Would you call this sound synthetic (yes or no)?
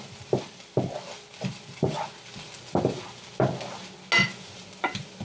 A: no